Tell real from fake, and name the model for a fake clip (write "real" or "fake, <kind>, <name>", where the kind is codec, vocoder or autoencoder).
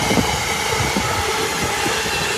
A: real